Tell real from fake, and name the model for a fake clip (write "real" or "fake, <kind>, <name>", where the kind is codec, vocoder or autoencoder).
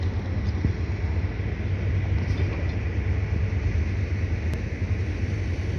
real